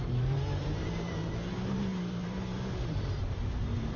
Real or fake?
fake